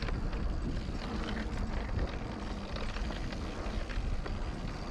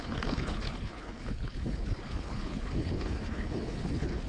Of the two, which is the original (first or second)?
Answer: first